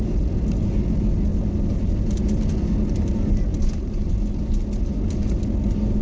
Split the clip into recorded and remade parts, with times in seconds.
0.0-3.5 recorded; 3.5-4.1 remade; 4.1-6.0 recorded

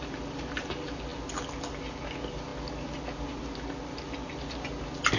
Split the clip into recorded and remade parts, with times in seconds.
0.0-5.2 recorded

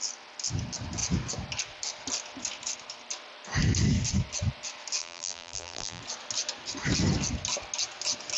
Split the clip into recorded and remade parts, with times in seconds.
0.0-5.0 recorded; 5.0-6.0 remade; 6.0-8.4 recorded

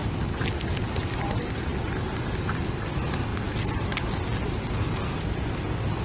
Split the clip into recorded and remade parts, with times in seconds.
0.0-6.0 recorded